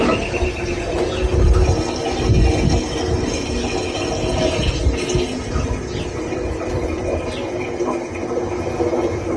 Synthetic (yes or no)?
no